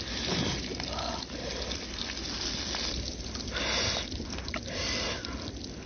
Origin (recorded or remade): recorded